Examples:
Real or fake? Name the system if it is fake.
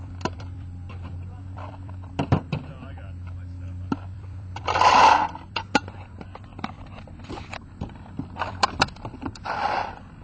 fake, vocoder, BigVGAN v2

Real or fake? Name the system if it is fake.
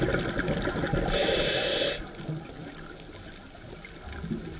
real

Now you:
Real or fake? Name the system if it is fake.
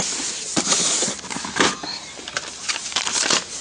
real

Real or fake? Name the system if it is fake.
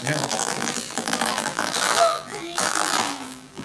fake, vocoder, BigVGAN v2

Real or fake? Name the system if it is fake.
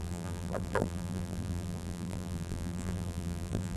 fake, vocoder, BigVGAN v2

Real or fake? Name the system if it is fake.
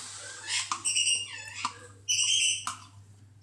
real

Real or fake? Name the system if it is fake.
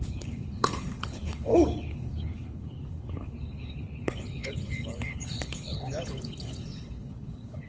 fake, codec, HILCodec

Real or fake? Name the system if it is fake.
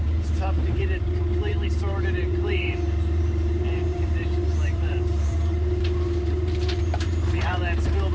fake, vocoder, BigVGAN v2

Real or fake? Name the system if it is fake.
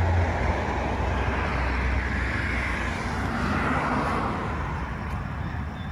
real